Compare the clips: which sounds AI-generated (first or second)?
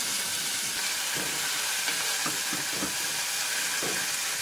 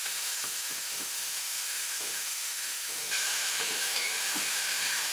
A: second